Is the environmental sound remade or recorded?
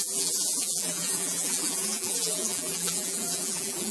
remade